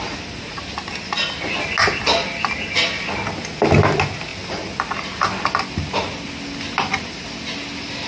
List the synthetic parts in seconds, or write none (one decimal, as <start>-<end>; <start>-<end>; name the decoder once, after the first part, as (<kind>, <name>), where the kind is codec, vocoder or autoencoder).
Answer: none